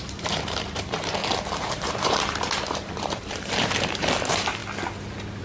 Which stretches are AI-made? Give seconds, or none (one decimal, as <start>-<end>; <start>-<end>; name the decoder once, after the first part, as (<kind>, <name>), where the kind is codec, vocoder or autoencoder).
0.0-4.6 (vocoder, BigVGAN v2)